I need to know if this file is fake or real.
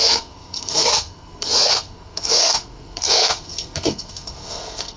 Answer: fake